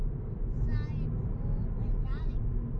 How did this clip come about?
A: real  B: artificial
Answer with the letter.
A